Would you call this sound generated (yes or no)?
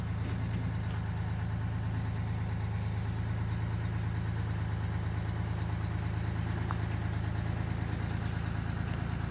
no